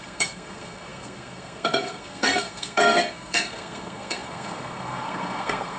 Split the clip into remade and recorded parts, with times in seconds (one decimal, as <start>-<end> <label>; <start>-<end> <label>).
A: 0.0-5.8 remade